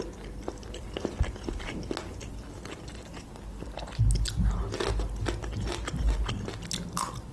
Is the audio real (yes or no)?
yes